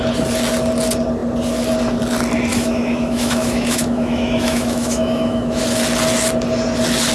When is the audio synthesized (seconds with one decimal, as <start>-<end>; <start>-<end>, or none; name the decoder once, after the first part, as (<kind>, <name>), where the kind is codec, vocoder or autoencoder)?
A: 2.5-5.6 (autoencoder, DAC-VAE)